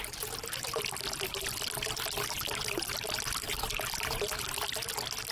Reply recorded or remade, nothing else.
recorded